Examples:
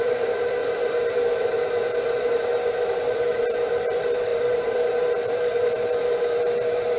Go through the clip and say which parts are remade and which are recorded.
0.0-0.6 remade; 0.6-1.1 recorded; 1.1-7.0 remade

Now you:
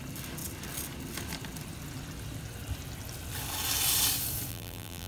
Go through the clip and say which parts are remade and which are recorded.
0.0-4.5 recorded; 4.5-5.1 remade

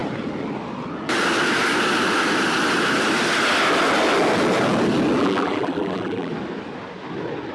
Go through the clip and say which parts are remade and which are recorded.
0.0-5.2 recorded; 5.2-6.3 remade; 6.3-7.5 recorded

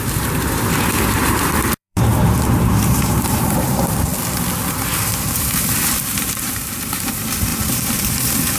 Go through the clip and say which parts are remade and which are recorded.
0.0-4.1 remade; 4.1-4.7 recorded; 4.7-8.6 remade